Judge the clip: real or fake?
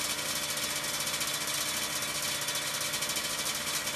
real